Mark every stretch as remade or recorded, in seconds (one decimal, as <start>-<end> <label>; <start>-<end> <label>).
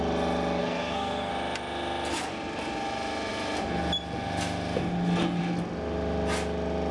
0.0-0.6 recorded; 0.6-1.3 remade; 1.3-6.9 recorded